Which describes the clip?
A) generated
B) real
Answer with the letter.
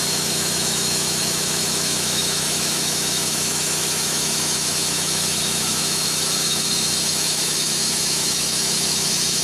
A